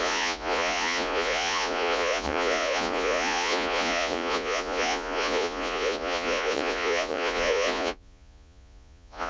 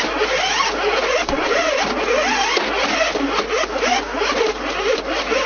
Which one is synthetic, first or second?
first